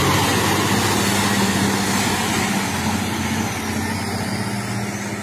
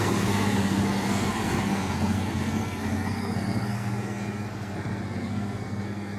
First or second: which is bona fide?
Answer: first